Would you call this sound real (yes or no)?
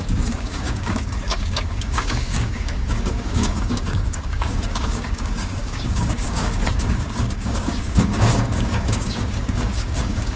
no